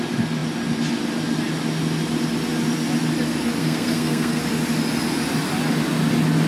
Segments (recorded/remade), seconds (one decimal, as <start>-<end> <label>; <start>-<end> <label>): 0.0-3.6 recorded; 3.6-4.4 remade; 4.4-6.5 recorded